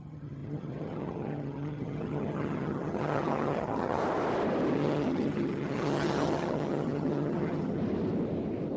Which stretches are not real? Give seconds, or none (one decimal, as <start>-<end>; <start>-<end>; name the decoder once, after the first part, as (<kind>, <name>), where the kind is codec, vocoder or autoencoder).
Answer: 0.0-4.0 (vocoder, HiFi-GAN); 4.7-7.8